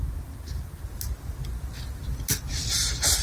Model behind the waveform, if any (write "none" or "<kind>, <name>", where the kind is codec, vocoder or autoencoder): none